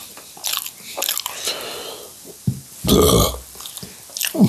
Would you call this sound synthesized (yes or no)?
no